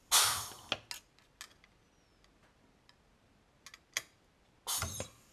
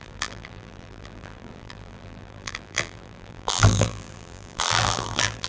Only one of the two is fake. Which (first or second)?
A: second